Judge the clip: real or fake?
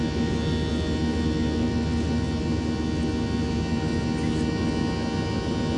real